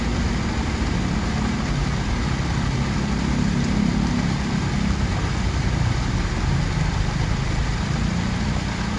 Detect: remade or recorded recorded